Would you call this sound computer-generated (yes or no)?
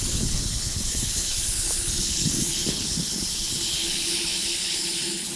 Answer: yes